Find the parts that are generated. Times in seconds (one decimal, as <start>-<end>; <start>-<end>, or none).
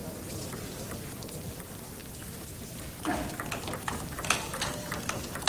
none